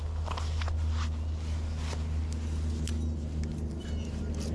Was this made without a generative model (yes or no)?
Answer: yes